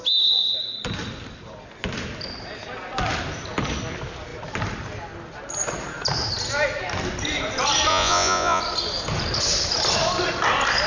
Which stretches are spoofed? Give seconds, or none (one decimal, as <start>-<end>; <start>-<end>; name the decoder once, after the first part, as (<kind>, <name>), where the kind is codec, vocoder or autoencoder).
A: 7.9-8.6 (vocoder, Vocos)